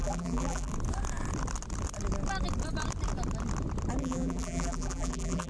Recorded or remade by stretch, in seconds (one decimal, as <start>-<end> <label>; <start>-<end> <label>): 0.0-0.7 remade; 0.7-4.0 recorded; 4.0-5.5 remade